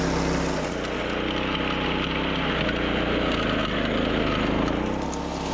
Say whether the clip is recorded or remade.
recorded